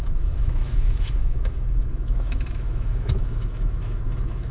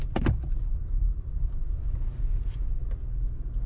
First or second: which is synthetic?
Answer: first